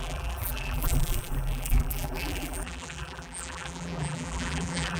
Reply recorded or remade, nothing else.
remade